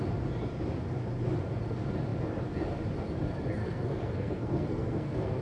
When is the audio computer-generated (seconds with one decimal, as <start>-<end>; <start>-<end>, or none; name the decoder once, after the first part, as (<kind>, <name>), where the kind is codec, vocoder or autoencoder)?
3.6-5.4 (codec, SNAC)